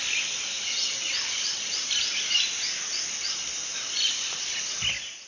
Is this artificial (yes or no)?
no